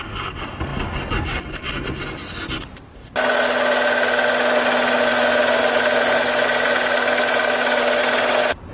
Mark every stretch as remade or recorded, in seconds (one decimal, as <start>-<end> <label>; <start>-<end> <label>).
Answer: 0.0-8.7 recorded